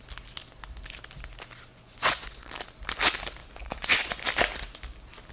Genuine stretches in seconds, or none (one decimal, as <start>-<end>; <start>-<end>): 0.0-1.7; 2.5-3.4; 4.2-5.3